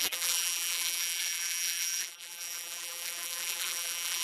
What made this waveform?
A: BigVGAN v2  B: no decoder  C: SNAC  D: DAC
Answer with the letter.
A